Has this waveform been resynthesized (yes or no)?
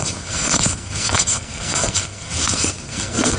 yes